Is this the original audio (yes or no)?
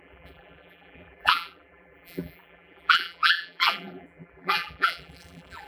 no